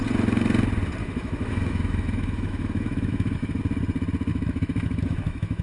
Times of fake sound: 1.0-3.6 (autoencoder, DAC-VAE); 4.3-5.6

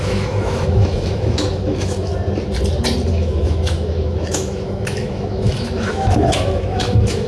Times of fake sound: 0.0-2.1 (autoencoder, DAC-VAE); 3.1-7.3

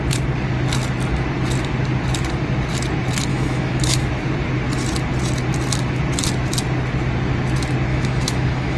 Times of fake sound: 3.3-4.1 (autoencoder, DAC-VAE); 7.9-8.8